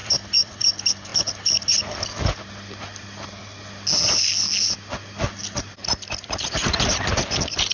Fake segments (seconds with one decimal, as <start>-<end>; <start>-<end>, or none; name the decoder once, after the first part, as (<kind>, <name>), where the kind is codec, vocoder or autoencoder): 0.0-0.7 (vocoder, BigVGAN v2)